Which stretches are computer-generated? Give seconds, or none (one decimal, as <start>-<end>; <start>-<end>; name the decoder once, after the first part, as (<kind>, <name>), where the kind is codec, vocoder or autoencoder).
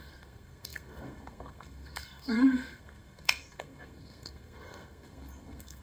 0.0-5.8 (codec, SNAC)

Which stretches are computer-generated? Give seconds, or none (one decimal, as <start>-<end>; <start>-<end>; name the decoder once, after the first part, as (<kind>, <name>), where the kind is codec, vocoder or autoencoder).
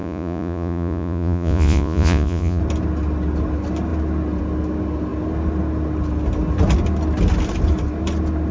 0.0-2.6 (vocoder, Vocos)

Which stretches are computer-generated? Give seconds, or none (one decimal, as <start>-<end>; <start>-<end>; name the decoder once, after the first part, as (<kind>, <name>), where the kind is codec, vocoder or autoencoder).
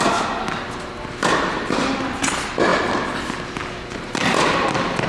none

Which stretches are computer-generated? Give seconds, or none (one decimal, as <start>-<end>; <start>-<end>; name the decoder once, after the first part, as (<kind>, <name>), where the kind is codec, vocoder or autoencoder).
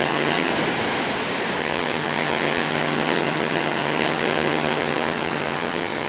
0.0-0.5 (vocoder, HiFi-GAN); 1.6-6.1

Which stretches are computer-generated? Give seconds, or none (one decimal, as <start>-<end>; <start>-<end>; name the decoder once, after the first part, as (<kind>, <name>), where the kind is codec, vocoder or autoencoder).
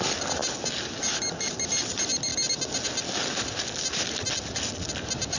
none